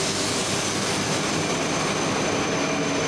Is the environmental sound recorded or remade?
recorded